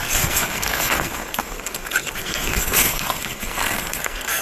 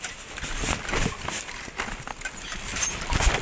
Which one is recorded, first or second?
second